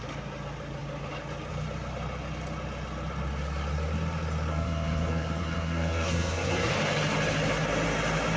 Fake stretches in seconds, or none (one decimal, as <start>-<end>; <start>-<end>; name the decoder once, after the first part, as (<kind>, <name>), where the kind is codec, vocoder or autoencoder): 4.5-6.7 (codec, SNAC)